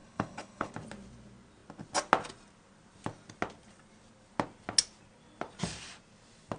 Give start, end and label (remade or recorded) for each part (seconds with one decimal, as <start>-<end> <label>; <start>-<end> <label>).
0.0-0.7 remade; 0.7-6.6 recorded